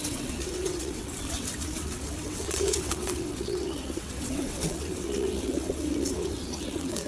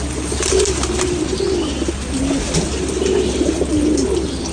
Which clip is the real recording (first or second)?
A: second